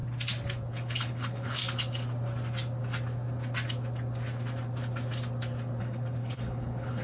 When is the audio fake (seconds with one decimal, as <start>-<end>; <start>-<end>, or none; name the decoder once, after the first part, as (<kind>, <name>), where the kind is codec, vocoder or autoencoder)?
0.7-1.6 (codec, HILCodec); 5.8-7.0